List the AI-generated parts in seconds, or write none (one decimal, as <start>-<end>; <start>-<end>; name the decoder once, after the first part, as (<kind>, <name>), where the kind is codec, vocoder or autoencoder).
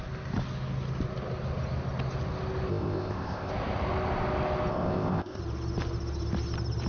2.7-3.5 (codec, ZipCodec); 4.7-5.4